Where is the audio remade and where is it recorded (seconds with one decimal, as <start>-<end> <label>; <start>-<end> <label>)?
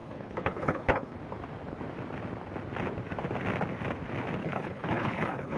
0.0-1.2 remade; 1.2-4.4 recorded; 4.4-5.6 remade